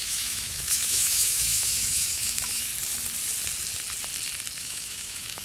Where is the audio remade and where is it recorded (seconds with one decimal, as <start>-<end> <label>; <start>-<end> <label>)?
0.0-2.7 remade; 2.7-4.6 recorded; 4.6-5.4 remade